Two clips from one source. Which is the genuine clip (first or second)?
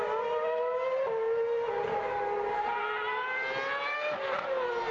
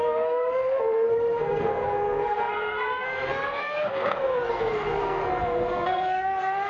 first